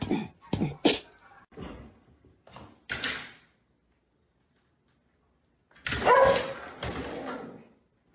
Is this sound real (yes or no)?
yes